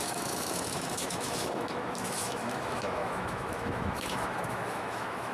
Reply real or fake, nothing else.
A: fake